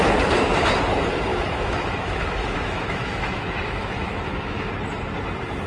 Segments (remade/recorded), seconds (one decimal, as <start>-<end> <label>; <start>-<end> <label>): 0.0-1.3 recorded; 1.3-4.7 remade; 4.7-5.7 recorded